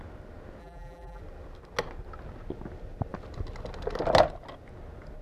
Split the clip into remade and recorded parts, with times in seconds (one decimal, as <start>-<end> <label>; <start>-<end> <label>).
0.0-0.6 recorded; 0.6-1.2 remade; 1.2-5.2 recorded